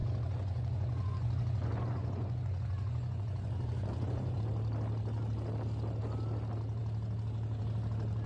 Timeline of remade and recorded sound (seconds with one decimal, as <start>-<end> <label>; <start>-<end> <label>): 0.0-4.4 remade; 4.4-8.3 recorded